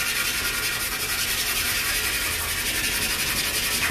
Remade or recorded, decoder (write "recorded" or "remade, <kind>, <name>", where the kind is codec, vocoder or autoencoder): recorded